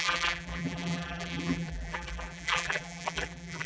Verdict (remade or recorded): remade